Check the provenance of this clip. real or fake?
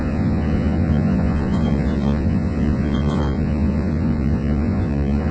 fake